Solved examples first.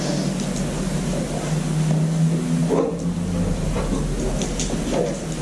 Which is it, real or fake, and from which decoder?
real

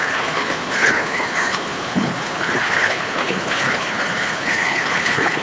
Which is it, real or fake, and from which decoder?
fake, codec, HILCodec